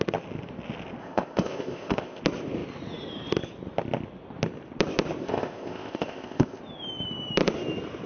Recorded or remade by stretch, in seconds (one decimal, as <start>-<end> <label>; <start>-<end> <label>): 0.0-1.0 recorded; 1.0-2.2 remade; 2.2-5.2 recorded; 5.2-6.6 remade; 6.6-8.1 recorded